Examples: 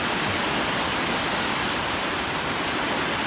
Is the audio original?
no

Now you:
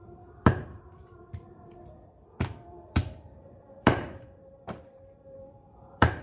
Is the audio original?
no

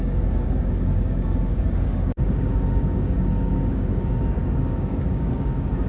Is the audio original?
no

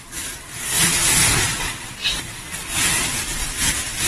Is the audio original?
yes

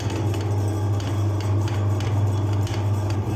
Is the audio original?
yes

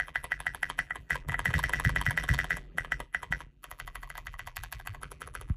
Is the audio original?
no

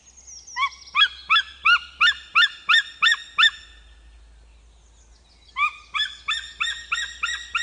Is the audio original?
yes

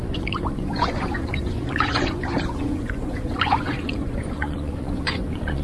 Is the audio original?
no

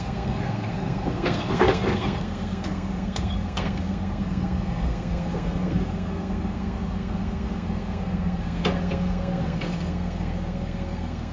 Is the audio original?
no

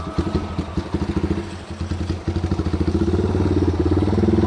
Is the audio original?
yes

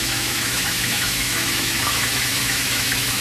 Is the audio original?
no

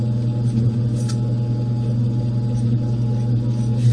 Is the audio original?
yes